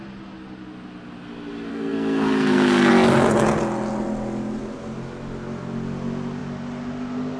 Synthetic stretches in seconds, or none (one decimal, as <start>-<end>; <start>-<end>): 1.7-2.9